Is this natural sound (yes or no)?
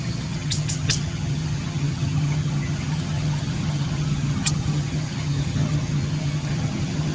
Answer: no